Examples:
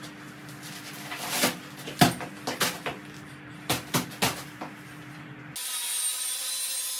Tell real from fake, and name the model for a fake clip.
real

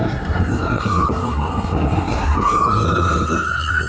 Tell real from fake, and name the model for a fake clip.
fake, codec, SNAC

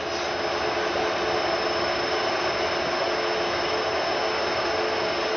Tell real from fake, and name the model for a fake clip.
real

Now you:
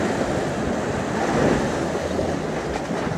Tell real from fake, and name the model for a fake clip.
real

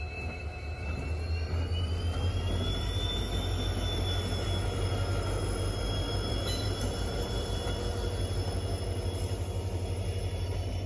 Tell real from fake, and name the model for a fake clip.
real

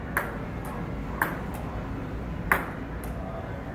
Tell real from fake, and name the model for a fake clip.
real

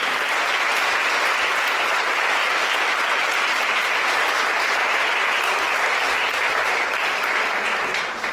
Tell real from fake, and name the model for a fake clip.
real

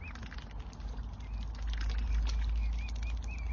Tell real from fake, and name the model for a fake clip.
real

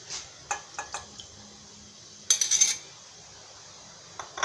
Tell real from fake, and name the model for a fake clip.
real